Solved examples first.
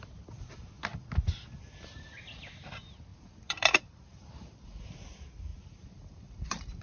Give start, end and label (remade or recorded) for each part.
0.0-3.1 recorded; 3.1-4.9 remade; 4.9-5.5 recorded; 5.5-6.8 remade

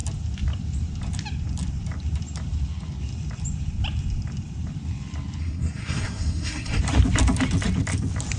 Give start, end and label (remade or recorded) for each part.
0.0-5.4 recorded; 5.4-6.8 remade; 6.8-8.4 recorded

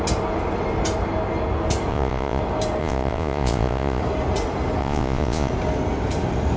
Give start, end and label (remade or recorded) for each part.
0.0-1.9 recorded; 1.9-2.4 remade; 2.4-2.8 recorded; 2.8-4.0 remade; 4.0-4.8 recorded; 4.8-5.5 remade; 5.5-6.6 recorded

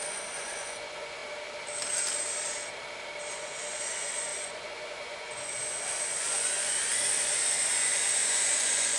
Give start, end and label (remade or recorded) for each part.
0.0-1.2 remade; 1.2-3.3 recorded; 3.3-9.0 remade

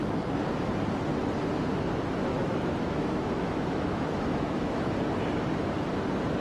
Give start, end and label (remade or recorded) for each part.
0.0-2.3 recorded; 2.3-4.9 remade; 4.9-6.4 recorded